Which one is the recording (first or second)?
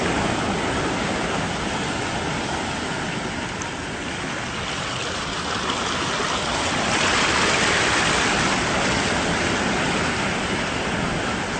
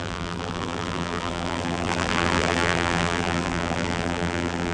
first